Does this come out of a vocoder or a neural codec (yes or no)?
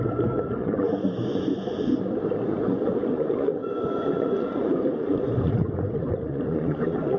yes